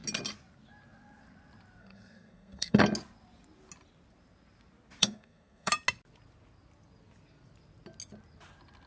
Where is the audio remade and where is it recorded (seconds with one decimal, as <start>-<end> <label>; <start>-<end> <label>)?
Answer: 0.0-1.8 recorded; 1.8-2.8 remade; 2.8-5.0 recorded; 5.0-5.7 remade; 5.7-8.9 recorded